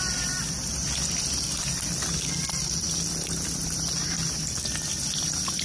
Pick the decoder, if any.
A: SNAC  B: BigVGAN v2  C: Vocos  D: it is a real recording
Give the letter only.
D